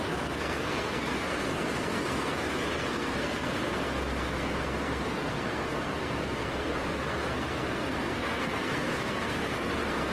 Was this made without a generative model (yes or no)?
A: no